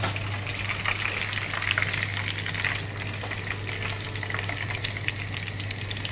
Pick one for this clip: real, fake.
real